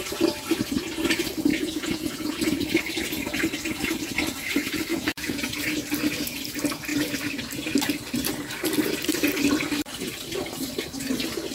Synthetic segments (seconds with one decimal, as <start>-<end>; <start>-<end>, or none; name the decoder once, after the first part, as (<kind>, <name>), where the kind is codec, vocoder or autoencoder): 1.5-2.4 (vocoder, Vocos); 4.9-5.6